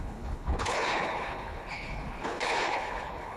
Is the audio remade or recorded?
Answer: remade